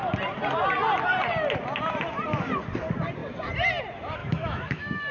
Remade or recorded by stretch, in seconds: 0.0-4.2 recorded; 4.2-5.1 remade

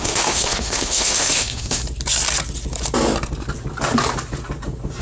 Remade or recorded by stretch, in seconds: 0.0-1.8 remade; 1.8-5.0 recorded

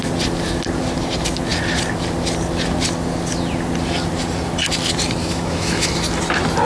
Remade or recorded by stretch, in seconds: 0.0-5.2 recorded; 5.2-5.9 remade; 5.9-6.7 recorded

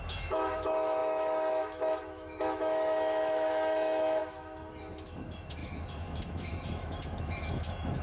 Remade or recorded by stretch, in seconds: 0.0-8.0 remade

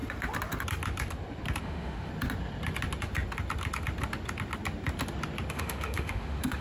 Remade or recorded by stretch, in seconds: 0.0-1.6 recorded; 1.6-2.1 remade; 2.1-5.5 recorded; 5.5-6.6 remade

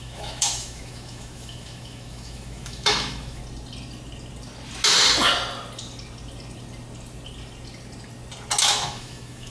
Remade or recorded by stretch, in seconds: 0.0-3.4 remade; 3.4-8.6 recorded; 8.6-9.5 remade

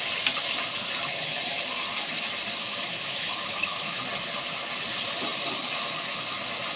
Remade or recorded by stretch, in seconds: 0.0-2.6 recorded; 2.6-4.0 remade; 4.0-6.8 recorded

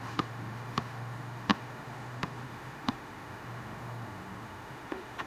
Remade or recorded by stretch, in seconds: 0.0-5.3 remade